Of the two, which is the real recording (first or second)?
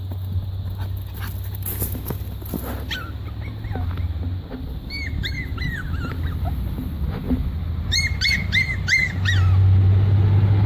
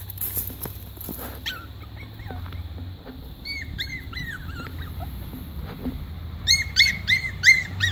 first